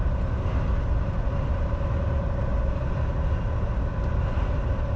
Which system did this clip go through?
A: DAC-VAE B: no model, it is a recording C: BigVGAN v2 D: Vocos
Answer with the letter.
B